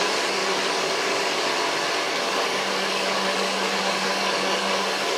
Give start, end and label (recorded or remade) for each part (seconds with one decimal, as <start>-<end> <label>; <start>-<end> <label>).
0.0-1.5 remade; 1.5-2.1 recorded; 2.1-5.2 remade